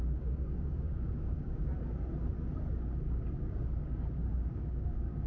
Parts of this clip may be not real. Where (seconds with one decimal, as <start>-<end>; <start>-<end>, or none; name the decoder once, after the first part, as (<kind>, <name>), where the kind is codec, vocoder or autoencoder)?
0.0-1.7 (codec, DAC); 3.2-5.3